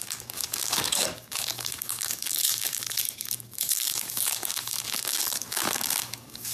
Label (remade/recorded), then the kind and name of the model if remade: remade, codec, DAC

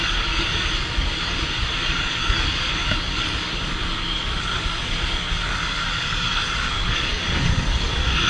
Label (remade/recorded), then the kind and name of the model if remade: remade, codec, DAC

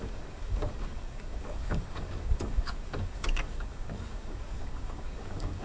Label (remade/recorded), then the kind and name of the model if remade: remade, codec, DAC